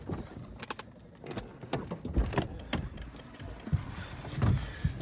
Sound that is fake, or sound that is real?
real